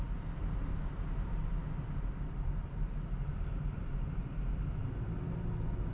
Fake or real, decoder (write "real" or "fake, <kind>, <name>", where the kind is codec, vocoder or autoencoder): real